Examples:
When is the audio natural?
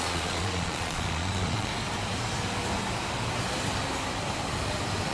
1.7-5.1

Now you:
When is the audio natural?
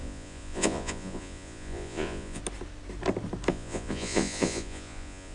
2.4-3.5